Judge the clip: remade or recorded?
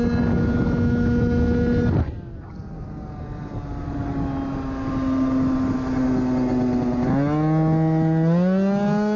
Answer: recorded